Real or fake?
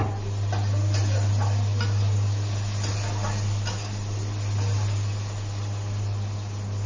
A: real